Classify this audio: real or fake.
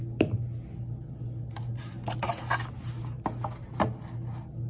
real